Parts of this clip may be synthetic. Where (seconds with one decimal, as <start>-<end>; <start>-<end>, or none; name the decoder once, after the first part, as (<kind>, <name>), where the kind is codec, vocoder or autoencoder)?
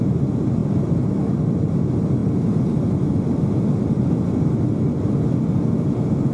none